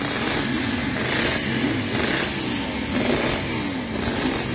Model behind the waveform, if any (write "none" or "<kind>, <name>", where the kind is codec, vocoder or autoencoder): none